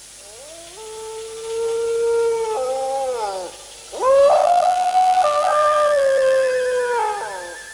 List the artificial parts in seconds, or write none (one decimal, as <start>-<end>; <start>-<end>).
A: 4.4-6.5